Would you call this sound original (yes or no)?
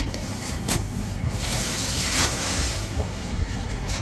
no